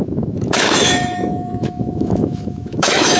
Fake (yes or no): yes